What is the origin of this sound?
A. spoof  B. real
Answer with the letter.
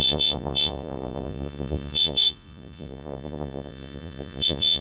A